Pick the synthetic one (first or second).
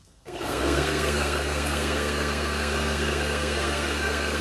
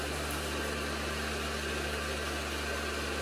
first